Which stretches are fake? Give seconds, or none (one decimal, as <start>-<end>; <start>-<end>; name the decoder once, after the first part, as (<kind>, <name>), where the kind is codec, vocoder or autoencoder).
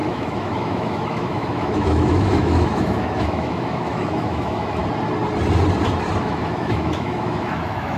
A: 0.0-4.8 (autoencoder, DAC-VAE); 6.2-8.0